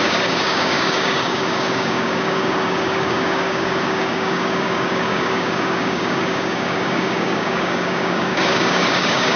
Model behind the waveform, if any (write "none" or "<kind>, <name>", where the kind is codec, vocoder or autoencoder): codec, DAC